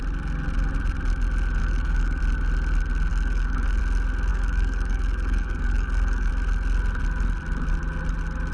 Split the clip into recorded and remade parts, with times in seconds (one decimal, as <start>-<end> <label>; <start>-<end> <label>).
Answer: 0.0-1.6 recorded; 1.6-2.2 remade; 2.2-3.1 recorded; 3.1-3.8 remade; 3.8-4.3 recorded; 4.3-6.3 remade; 6.3-8.5 recorded